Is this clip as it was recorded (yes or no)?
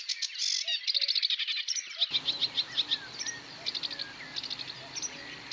yes